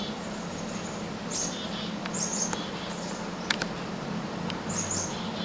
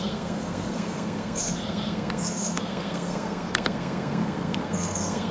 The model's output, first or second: second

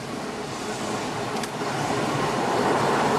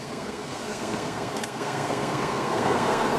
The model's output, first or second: second